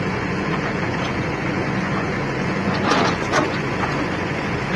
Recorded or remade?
remade